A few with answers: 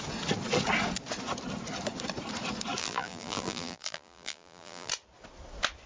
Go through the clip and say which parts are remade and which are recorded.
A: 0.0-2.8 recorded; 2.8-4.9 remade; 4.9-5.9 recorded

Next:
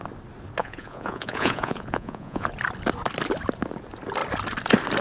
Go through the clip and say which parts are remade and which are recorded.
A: 0.0-0.6 recorded; 0.6-2.5 remade; 2.5-5.0 recorded

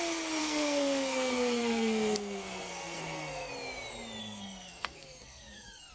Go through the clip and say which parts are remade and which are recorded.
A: 0.0-0.4 recorded; 0.4-3.5 remade; 3.5-4.2 recorded; 4.2-5.9 remade

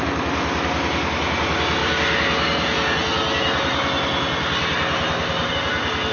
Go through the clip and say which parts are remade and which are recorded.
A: 0.0-6.1 recorded

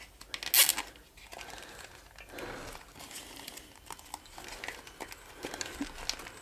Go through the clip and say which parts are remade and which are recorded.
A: 0.0-6.4 recorded